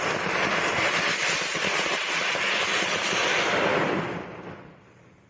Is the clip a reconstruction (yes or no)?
no